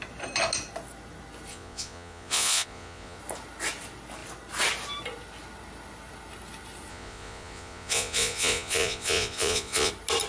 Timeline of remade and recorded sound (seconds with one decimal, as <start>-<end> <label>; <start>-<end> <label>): 0.0-1.5 recorded; 1.5-3.2 remade; 3.2-6.9 recorded; 6.9-9.9 remade; 9.9-10.3 recorded